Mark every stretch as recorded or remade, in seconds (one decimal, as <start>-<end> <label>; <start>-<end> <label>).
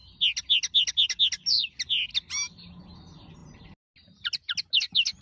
0.0-5.2 recorded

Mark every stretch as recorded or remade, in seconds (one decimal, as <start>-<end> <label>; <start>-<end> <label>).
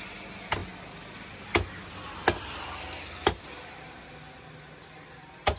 0.0-5.6 recorded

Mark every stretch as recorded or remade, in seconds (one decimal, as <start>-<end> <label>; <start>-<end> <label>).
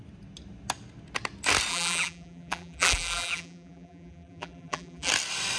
0.0-1.7 recorded; 1.7-5.1 remade; 5.1-5.6 recorded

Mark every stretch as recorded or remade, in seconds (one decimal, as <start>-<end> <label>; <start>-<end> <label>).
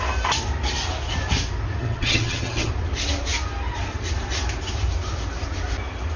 0.0-1.8 recorded; 1.8-2.7 remade; 2.7-6.2 recorded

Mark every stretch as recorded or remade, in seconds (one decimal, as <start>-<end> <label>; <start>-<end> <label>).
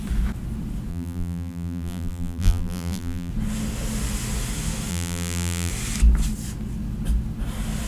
0.0-0.9 recorded; 0.9-3.3 remade; 3.3-4.9 recorded; 4.9-5.7 remade; 5.7-7.9 recorded